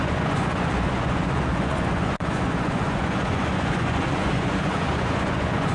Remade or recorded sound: remade